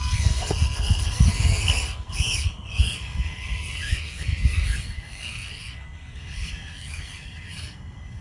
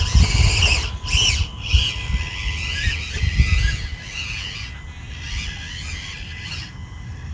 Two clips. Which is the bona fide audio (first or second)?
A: second